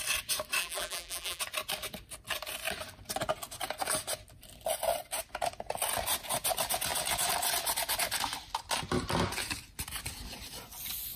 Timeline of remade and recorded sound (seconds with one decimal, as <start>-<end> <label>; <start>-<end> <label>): 0.0-0.6 recorded; 0.6-1.4 remade; 1.4-11.2 recorded